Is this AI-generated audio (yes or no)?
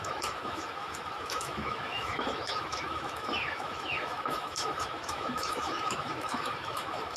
yes